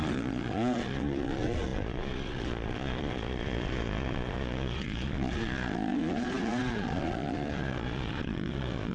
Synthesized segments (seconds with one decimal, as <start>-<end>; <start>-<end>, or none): 0.0-8.9